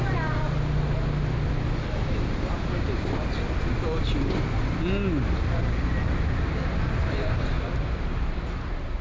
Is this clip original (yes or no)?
yes